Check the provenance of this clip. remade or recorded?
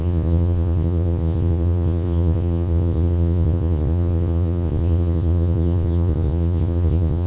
remade